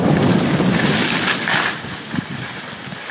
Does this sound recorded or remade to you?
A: recorded